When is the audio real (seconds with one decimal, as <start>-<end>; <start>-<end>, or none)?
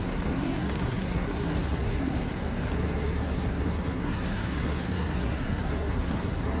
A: none